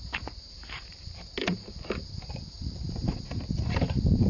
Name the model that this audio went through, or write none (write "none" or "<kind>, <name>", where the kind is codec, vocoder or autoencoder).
vocoder, BigVGAN v2